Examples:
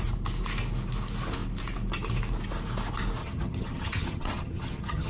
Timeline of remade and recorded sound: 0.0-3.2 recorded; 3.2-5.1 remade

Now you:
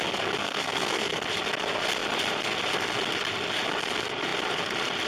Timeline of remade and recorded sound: 0.0-0.4 recorded; 0.4-1.2 remade; 1.2-5.1 recorded

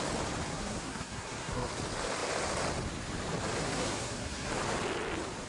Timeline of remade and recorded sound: 0.0-0.5 recorded; 0.5-1.7 remade; 1.7-3.6 recorded; 3.6-4.5 remade; 4.5-5.5 recorded

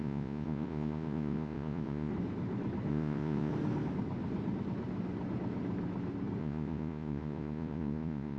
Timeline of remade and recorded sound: 0.0-2.1 remade; 2.1-2.9 recorded; 2.9-3.5 remade; 3.5-6.4 recorded; 6.4-8.4 remade